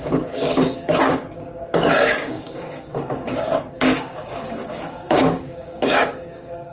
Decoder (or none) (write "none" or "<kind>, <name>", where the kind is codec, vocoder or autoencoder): codec, DAC